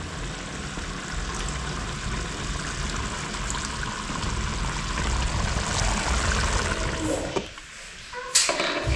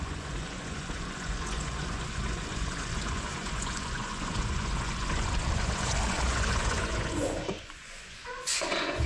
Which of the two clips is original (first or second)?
first